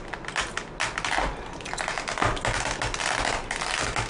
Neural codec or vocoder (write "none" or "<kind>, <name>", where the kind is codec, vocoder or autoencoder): none